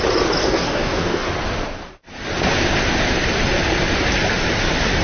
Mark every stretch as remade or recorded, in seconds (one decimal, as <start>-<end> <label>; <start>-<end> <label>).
0.0-0.4 recorded; 0.4-1.3 remade; 1.3-5.0 recorded